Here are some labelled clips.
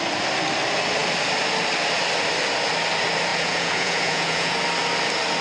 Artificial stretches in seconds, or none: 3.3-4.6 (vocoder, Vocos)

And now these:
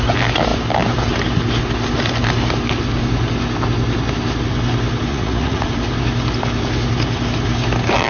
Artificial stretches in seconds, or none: 5.1-5.7 (vocoder, Vocos)

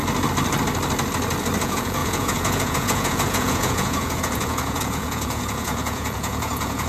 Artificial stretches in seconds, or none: 1.6-6.9 (vocoder, Vocos)

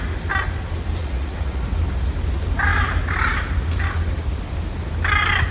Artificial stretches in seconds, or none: 1.0-1.6 (vocoder, Vocos)

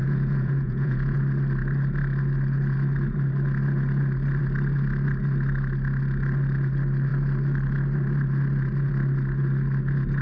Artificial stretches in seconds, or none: 0.0-1.2 (vocoder, Vocos)

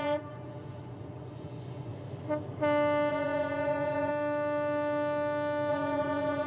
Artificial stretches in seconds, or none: 0.0-1.9 (vocoder, Vocos); 3.1-4.1; 5.7-6.5

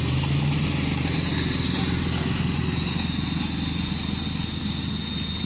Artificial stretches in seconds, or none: none

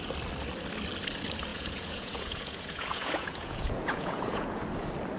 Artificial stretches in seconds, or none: 1.5-4.6 (vocoder, Vocos)